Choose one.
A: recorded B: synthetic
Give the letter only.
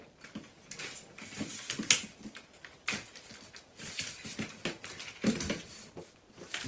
A